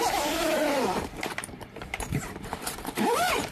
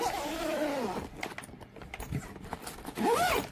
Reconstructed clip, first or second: first